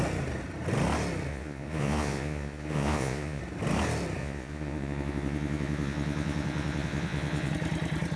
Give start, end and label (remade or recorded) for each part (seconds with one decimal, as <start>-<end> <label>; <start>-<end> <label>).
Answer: 0.0-1.3 recorded; 1.3-3.4 remade; 3.4-4.2 recorded; 4.2-7.5 remade; 7.5-8.2 recorded